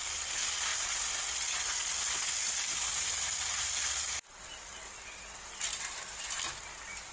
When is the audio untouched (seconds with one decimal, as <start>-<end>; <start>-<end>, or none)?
0.0-7.1